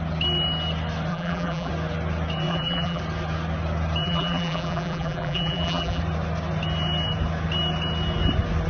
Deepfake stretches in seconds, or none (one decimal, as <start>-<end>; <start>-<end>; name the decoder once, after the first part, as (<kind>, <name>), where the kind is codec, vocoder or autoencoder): 1.1-1.7 (vocoder, BigVGAN v2); 2.5-3.0; 4.0-6.0